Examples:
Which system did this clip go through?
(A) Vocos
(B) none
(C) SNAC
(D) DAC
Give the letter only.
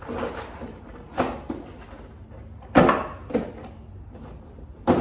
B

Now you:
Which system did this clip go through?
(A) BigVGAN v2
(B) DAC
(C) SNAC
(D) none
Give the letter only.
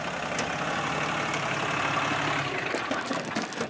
A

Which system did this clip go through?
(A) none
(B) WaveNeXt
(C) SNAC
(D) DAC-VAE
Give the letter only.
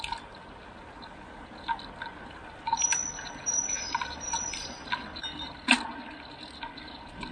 A